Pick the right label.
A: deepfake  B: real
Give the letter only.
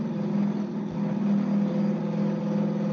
B